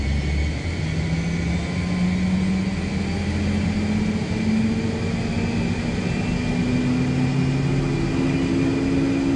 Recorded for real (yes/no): yes